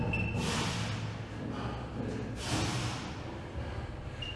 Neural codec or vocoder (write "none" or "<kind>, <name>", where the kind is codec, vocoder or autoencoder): none